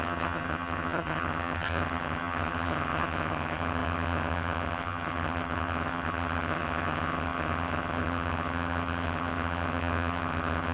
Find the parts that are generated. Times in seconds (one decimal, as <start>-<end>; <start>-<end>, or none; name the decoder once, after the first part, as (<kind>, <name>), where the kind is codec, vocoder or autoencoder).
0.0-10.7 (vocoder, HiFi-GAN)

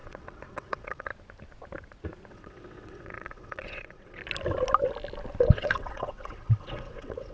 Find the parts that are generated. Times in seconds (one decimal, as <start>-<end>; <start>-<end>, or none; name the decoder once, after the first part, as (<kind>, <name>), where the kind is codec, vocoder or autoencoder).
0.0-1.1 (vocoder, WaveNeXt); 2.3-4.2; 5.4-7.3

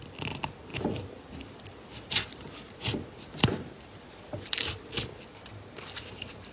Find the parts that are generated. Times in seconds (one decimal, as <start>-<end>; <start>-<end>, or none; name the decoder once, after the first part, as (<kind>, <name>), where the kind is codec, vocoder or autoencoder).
none

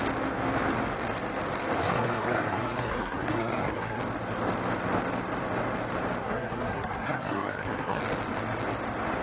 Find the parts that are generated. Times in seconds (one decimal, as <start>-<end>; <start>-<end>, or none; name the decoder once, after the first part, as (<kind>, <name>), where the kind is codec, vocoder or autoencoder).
1.8-4.0 (codec, SNAC); 6.2-8.0